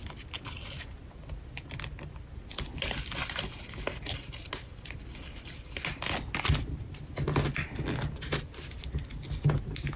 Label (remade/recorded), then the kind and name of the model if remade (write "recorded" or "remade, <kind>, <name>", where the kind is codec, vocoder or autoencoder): recorded